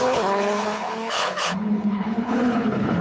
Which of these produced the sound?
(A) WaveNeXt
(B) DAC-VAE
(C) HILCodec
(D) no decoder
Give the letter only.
C